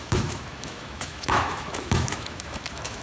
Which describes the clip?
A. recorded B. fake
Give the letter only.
B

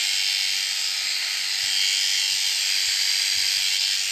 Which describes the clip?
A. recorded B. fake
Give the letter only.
A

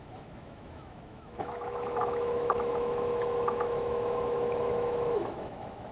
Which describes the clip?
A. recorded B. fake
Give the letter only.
B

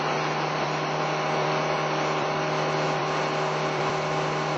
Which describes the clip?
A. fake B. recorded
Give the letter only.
B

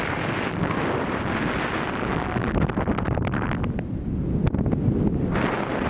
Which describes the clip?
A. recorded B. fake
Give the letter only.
A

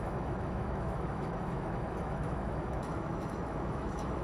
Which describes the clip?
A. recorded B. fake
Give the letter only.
B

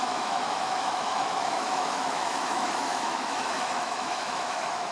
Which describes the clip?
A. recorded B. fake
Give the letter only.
B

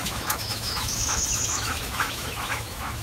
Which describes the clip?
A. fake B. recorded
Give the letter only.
A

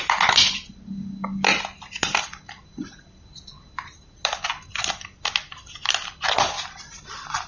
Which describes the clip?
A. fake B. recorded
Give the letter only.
B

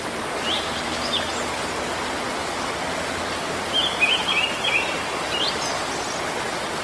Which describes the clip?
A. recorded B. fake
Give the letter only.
A